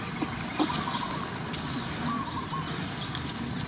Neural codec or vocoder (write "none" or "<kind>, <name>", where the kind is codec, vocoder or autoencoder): none